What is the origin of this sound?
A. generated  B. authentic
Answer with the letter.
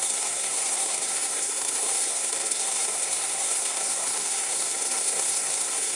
A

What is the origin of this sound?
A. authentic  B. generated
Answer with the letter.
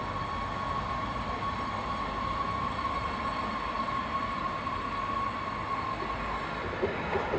A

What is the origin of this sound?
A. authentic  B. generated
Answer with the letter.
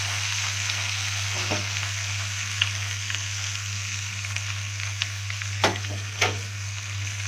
B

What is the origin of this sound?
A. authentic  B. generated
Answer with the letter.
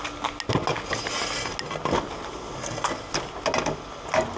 A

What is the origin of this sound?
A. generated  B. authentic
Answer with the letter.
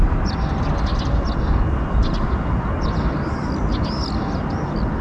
B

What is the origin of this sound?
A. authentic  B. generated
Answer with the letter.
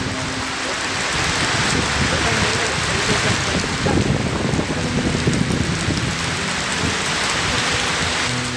A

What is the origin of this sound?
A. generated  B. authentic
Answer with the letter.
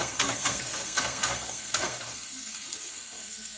A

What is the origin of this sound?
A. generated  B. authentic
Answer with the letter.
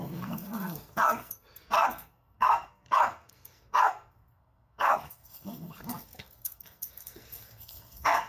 A